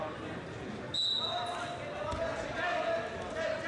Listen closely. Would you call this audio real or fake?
real